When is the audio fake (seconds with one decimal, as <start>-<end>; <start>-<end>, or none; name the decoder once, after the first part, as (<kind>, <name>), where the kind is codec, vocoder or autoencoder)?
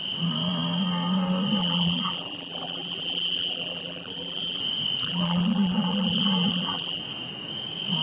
1.6-4.6 (vocoder, BigVGAN v2); 5.0-7.0